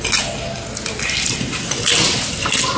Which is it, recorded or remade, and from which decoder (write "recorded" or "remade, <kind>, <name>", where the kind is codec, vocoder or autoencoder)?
recorded